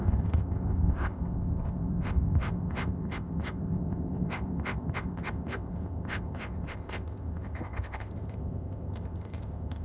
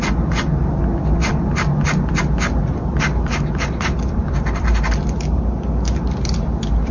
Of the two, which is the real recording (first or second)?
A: second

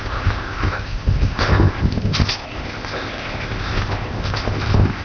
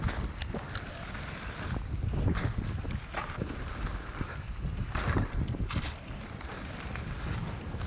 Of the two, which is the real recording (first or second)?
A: second